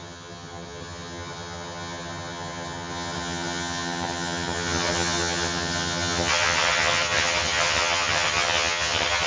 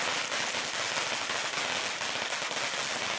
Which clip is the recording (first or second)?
second